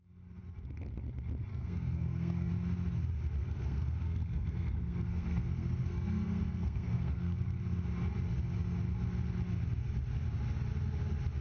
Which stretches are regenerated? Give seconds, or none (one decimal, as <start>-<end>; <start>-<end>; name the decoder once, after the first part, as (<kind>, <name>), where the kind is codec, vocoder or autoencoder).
1.5-2.5 (codec, SNAC); 3.4-7.6